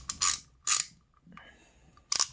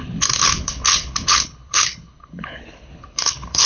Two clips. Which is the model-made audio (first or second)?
second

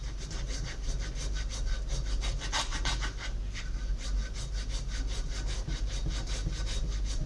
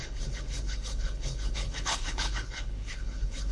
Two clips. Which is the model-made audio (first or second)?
second